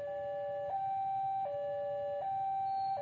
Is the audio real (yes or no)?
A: yes